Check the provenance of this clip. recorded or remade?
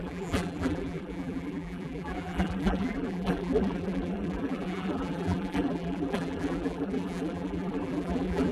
remade